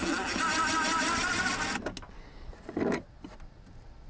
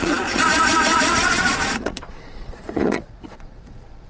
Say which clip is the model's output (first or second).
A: second